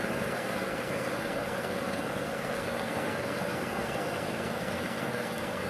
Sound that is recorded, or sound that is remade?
remade